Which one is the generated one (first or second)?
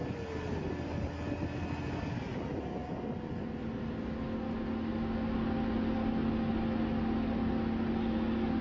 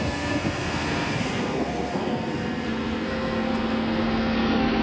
second